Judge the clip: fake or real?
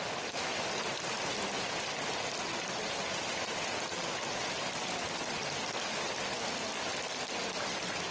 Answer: real